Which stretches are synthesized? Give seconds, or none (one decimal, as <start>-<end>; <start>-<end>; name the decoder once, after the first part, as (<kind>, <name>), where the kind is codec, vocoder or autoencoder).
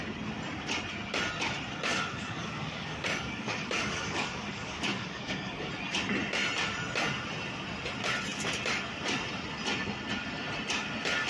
1.9-5.7 (codec, DAC)